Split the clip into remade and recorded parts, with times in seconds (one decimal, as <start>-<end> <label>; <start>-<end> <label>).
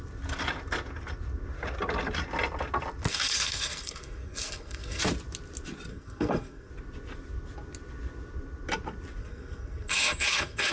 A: 0.0-3.1 recorded; 3.1-5.0 remade; 5.0-5.9 recorded; 5.9-6.7 remade; 6.7-9.2 recorded; 9.2-10.7 remade